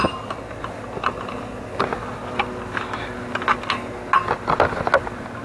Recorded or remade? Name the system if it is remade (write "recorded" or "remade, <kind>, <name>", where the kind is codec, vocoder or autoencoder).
recorded